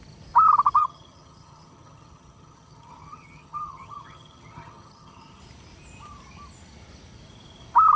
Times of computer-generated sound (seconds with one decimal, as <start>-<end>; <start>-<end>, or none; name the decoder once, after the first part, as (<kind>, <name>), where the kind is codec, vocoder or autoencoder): 0.8-5.4 (vocoder, HiFi-GAN)